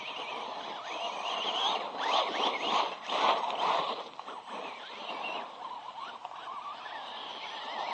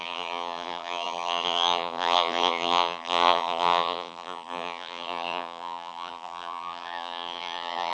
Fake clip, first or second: second